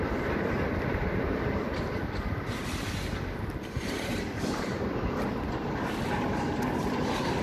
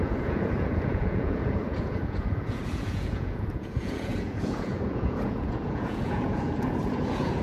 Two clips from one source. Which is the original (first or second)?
first